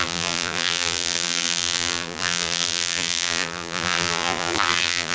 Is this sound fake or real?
fake